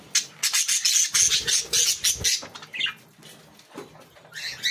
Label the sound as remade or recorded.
recorded